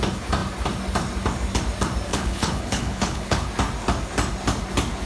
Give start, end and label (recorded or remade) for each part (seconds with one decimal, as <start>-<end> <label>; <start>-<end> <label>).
0.0-2.1 recorded; 2.1-3.5 remade; 3.5-5.1 recorded